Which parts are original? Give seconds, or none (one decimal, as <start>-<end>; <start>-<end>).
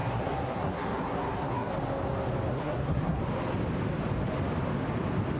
1.7-2.5; 3.2-5.4